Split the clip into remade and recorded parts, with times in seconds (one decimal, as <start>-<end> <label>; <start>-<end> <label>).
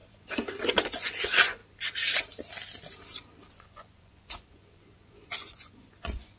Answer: 0.0-1.6 remade; 1.6-3.5 recorded; 3.5-6.4 remade